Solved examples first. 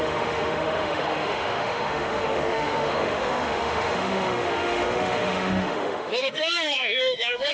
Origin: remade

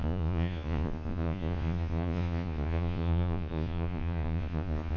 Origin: remade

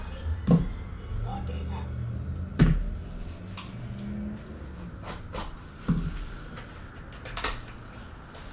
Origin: recorded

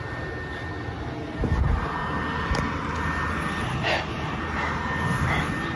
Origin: recorded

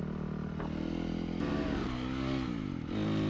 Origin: recorded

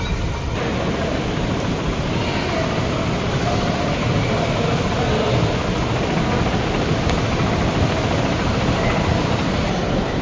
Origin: recorded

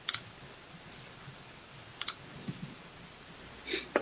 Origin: recorded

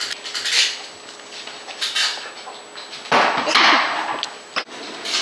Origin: recorded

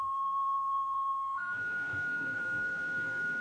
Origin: remade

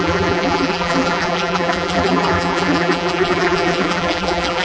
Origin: remade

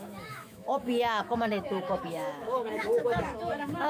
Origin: remade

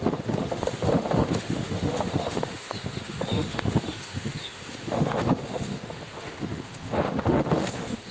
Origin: remade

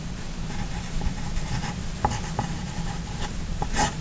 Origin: remade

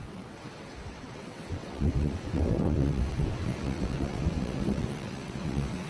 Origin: remade